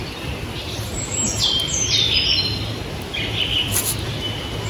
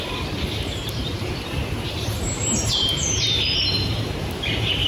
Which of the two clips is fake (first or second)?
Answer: second